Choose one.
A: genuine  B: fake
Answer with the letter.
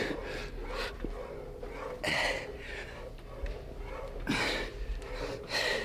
A